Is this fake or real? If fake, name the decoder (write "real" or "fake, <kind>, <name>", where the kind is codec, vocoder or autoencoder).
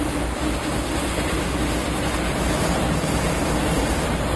fake, vocoder, BigVGAN v2